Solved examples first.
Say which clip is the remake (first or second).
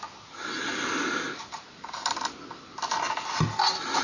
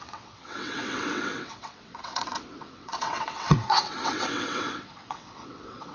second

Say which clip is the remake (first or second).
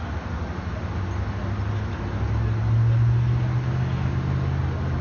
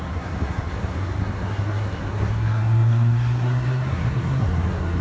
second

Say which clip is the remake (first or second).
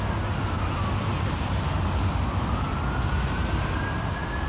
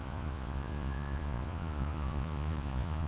second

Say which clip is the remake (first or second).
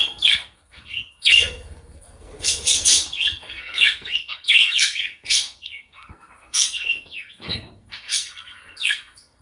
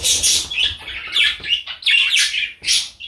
first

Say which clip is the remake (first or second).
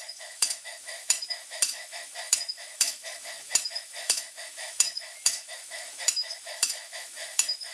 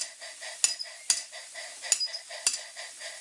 first